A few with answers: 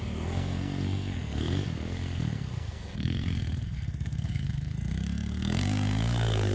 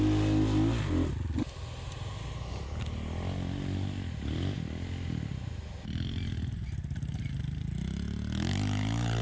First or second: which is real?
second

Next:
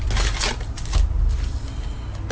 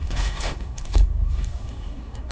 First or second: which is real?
first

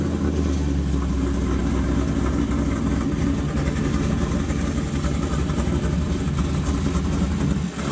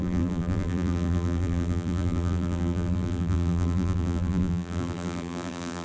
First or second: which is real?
first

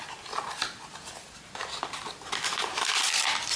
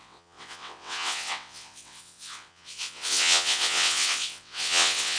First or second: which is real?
first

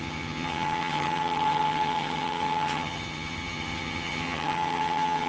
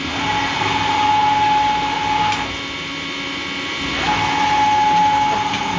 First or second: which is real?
second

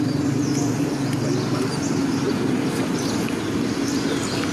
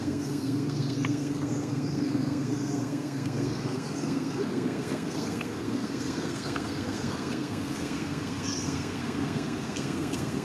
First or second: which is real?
first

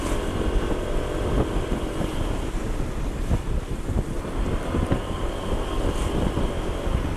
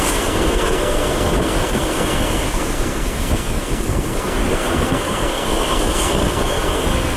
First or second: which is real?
first